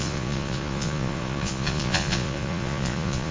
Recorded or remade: remade